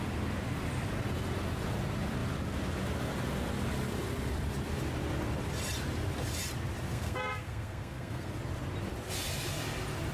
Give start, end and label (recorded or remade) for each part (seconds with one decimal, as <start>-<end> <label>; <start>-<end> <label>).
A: 0.0-6.9 recorded; 6.9-8.3 remade; 8.3-10.1 recorded